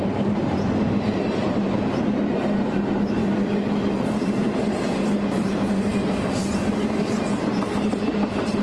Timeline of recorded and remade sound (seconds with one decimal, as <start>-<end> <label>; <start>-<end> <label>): 0.0-3.2 remade; 3.2-4.1 recorded; 4.1-8.6 remade